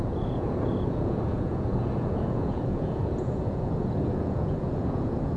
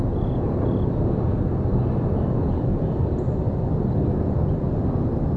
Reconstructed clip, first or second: first